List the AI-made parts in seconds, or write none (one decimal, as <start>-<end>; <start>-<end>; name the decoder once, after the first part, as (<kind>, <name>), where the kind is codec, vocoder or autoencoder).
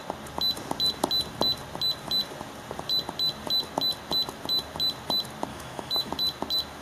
5.5-6.1 (autoencoder, DAC-VAE)